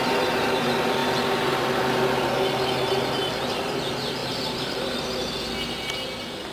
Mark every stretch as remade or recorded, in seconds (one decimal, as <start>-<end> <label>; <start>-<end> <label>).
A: 0.0-6.5 recorded